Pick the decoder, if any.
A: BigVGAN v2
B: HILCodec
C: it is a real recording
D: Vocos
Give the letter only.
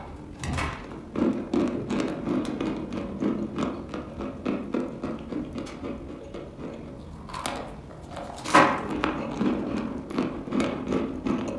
C